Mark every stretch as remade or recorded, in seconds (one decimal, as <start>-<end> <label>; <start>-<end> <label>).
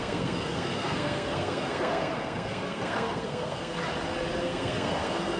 0.0-3.8 remade; 3.8-4.4 recorded; 4.4-5.4 remade